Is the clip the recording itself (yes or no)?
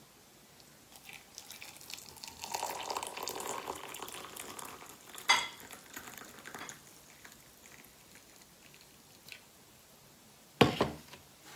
yes